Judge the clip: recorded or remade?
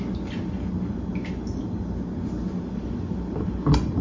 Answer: recorded